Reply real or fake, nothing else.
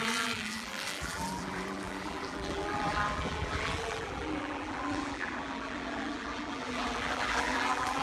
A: fake